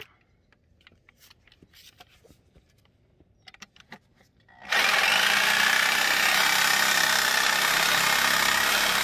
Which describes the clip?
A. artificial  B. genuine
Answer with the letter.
B